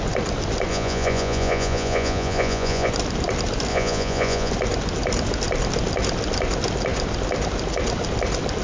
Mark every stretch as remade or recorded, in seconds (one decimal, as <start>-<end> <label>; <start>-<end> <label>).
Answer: 0.0-0.7 recorded; 0.7-2.9 remade; 2.9-3.7 recorded; 3.7-4.5 remade; 4.5-8.6 recorded